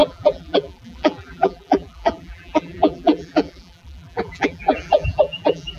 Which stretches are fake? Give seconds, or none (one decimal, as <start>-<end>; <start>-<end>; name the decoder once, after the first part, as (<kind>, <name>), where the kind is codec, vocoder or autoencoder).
0.0-5.8 (vocoder, BigVGAN v2)